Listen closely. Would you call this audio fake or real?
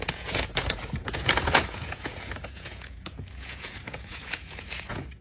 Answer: fake